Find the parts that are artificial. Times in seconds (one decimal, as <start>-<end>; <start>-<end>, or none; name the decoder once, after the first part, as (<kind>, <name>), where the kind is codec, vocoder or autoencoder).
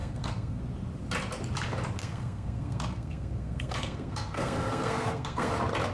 0.0-0.6 (codec, SNAC); 2.0-5.5